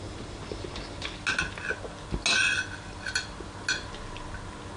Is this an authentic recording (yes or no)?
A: yes